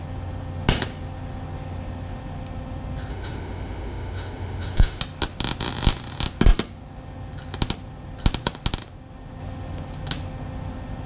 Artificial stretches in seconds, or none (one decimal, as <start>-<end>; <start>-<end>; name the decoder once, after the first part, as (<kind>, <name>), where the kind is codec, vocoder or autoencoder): 3.1-5.0 (autoencoder, DAC-VAE)